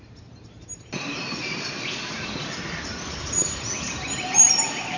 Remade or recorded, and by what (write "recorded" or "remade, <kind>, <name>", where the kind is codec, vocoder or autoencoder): recorded